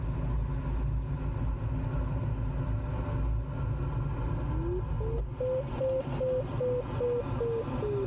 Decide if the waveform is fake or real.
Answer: real